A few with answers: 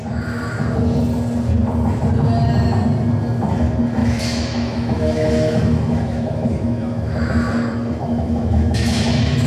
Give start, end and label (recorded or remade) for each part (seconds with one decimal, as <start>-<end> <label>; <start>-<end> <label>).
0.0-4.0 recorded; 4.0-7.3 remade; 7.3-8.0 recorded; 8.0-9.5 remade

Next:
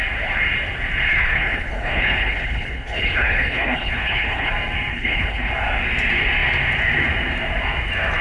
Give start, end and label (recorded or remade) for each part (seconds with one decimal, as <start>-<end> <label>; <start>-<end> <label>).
0.0-1.1 recorded; 1.1-4.5 remade; 4.5-4.9 recorded; 4.9-5.5 remade; 5.5-8.2 recorded

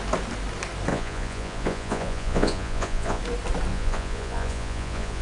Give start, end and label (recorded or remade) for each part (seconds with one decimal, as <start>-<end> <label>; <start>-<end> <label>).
0.0-0.9 recorded; 0.9-3.2 remade; 3.2-3.7 recorded; 3.7-5.2 remade